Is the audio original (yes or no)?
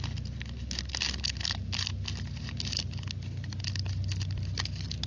yes